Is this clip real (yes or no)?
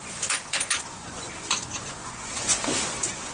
no